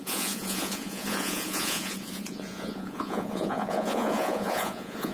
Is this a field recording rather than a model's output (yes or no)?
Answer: no